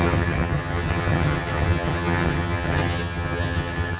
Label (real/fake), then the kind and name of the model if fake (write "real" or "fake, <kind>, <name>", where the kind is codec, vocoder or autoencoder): fake, vocoder, HiFi-GAN